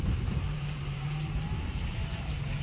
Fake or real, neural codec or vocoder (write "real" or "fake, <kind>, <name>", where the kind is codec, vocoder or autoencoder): fake, vocoder, BigVGAN v2